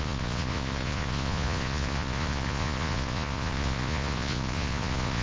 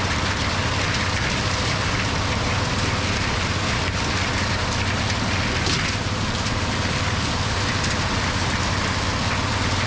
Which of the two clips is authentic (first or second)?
second